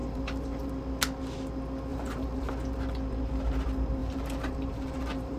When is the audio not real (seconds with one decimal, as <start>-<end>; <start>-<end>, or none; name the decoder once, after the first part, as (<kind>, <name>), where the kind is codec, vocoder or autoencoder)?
0.0-0.7 (vocoder, BigVGAN v2); 1.9-2.5; 4.0-5.4